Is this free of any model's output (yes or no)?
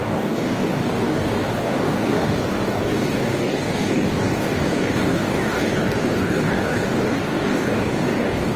no